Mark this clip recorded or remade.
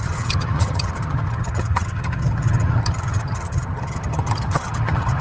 remade